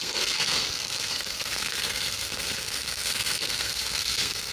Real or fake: fake